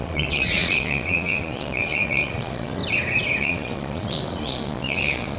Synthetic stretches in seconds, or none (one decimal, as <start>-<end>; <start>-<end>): 0.0-2.8; 3.4-5.4